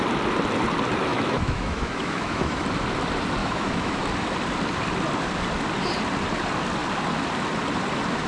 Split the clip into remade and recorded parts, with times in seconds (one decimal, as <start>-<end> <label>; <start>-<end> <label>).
0.0-1.1 recorded; 1.1-2.6 remade; 2.6-3.4 recorded; 3.4-4.0 remade; 4.0-8.3 recorded